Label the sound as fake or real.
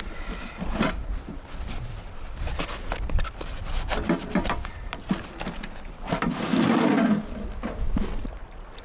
real